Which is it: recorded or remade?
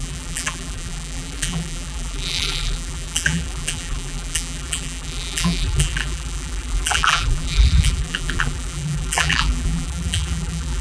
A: remade